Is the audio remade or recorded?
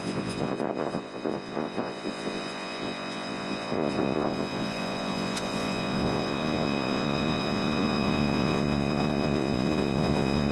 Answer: remade